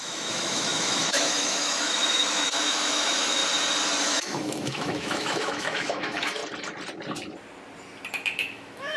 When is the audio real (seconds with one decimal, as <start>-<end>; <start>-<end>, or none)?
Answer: 3.4-4.0; 6.4-8.1